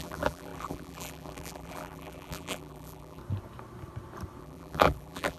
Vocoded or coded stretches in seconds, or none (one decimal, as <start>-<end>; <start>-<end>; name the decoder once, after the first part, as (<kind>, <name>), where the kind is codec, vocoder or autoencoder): 0.0-3.2 (vocoder, BigVGAN v2); 4.4-5.4